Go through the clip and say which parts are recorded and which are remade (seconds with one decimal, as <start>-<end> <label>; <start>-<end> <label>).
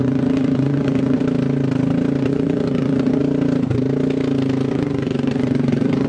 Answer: 0.0-1.2 remade; 1.2-2.2 recorded; 2.2-3.2 remade; 3.2-4.7 recorded; 4.7-6.1 remade